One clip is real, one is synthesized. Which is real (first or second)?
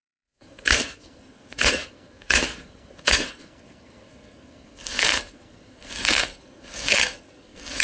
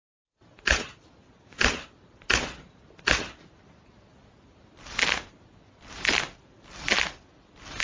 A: second